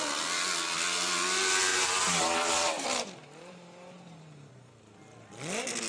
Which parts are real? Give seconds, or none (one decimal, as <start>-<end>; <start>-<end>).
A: 0.0-1.7; 4.7-5.9